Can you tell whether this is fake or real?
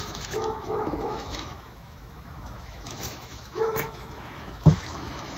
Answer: fake